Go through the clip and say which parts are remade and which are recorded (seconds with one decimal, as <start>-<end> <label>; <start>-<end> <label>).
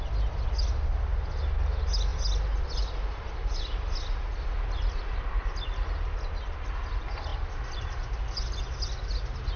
0.0-9.6 recorded